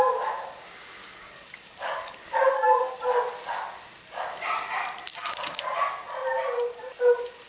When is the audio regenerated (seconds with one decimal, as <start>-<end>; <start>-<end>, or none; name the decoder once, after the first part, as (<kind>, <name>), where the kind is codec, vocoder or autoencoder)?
1.0-2.9 (codec, DAC)